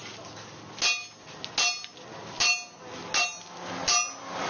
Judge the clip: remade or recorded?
recorded